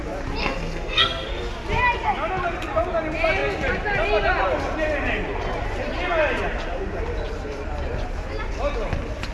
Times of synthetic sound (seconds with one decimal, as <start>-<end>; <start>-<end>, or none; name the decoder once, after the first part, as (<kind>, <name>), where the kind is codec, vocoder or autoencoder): 0.4-1.5 (codec, SNAC)